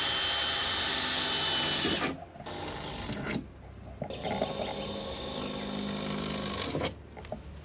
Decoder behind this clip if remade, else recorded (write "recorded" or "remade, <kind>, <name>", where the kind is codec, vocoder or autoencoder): recorded